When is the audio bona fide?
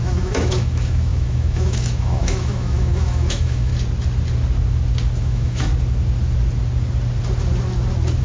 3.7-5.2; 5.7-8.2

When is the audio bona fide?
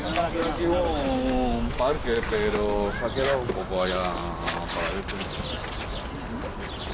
0.0-0.9; 1.7-6.9